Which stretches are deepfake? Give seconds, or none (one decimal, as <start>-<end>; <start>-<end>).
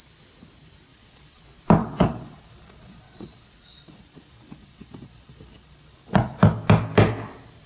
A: 0.9-1.4; 1.8-6.4